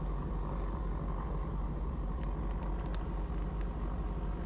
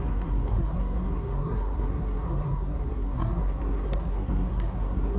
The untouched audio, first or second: first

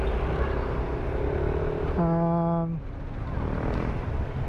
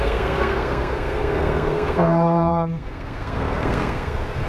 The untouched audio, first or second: first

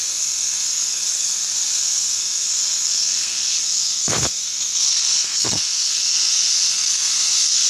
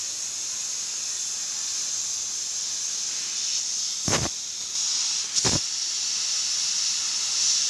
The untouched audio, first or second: second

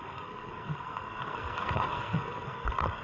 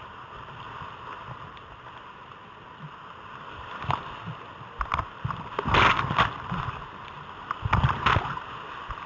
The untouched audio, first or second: second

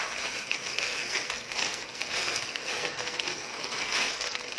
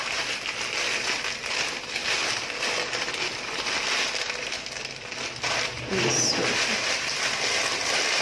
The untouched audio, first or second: second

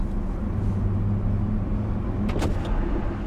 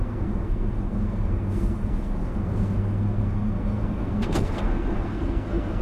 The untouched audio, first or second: first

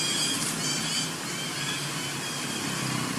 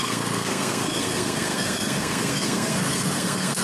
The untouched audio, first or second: first